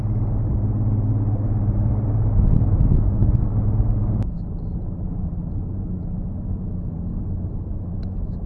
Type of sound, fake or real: real